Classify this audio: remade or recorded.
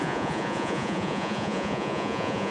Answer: remade